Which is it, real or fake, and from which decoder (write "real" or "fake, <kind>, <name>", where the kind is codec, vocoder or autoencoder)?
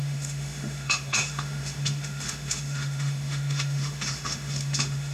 fake, autoencoder, DAC-VAE